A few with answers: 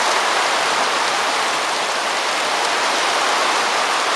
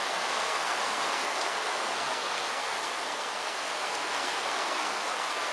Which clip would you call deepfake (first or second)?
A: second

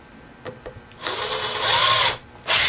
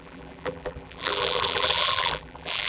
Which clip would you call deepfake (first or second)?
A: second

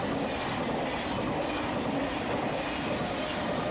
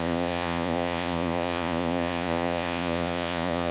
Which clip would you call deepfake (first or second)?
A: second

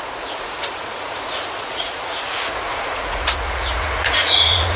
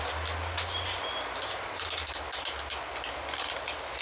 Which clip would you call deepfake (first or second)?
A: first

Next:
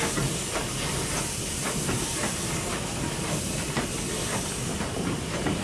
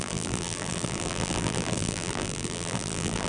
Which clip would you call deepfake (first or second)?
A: second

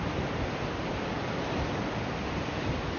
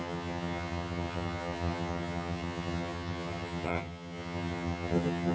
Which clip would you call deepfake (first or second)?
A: second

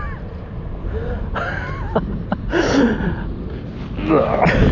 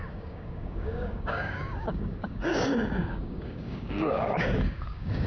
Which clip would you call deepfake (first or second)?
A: second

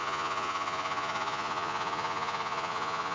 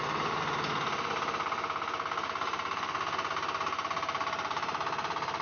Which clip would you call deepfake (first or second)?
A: first